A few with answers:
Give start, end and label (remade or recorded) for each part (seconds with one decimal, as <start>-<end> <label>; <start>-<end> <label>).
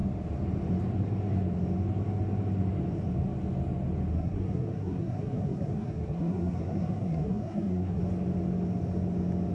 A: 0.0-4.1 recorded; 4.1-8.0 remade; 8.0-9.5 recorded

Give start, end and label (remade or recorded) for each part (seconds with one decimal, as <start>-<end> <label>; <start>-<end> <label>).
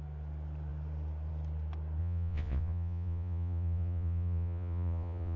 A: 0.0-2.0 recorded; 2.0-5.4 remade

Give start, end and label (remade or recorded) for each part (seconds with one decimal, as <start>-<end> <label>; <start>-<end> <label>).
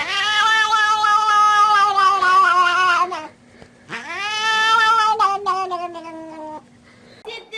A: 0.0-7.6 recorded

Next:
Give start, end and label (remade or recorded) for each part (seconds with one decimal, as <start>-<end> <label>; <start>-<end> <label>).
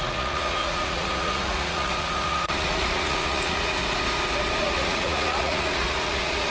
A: 0.0-3.8 remade; 3.8-4.6 recorded; 4.6-6.5 remade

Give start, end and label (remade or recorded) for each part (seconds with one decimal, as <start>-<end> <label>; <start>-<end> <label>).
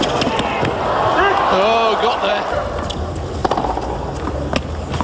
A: 0.0-5.0 recorded